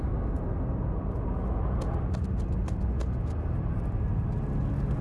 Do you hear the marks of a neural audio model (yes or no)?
no